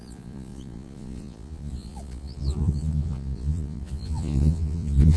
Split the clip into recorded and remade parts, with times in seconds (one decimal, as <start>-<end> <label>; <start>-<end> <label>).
0.0-5.2 remade